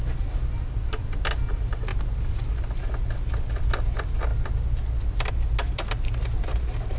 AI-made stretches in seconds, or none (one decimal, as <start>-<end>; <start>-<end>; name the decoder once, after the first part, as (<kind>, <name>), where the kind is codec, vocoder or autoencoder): none